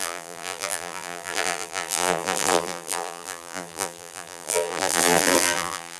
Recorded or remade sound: remade